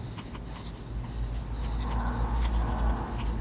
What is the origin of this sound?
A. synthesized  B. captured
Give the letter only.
B